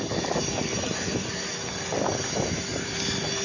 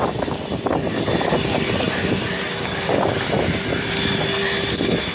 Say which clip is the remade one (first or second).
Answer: second